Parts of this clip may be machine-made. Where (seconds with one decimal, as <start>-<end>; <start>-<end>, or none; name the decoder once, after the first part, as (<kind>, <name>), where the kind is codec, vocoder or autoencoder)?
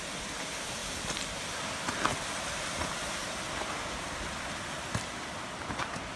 none